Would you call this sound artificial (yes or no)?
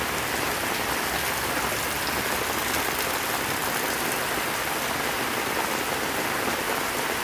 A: no